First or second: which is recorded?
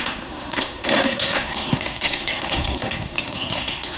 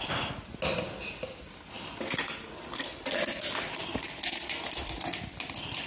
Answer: second